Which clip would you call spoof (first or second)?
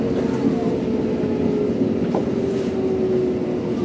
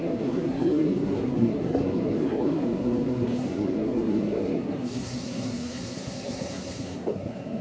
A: second